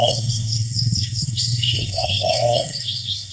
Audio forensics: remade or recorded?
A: remade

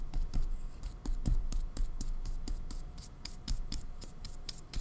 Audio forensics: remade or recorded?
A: remade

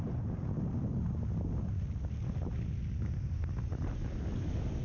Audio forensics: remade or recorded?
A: recorded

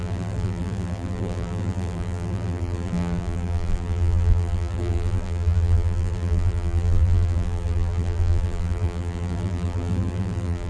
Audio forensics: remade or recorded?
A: remade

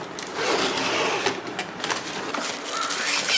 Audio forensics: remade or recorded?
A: recorded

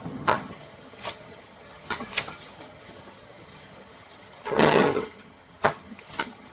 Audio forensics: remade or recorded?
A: remade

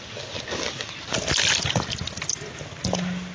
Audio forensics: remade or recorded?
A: recorded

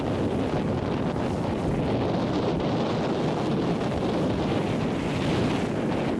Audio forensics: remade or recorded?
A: recorded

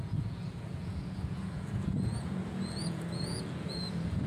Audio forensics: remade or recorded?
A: remade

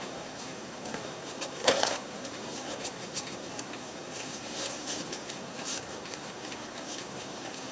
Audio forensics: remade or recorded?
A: remade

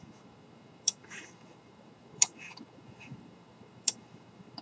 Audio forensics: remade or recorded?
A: remade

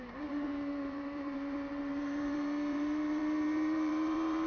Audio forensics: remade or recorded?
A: remade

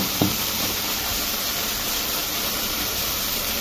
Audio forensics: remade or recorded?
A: remade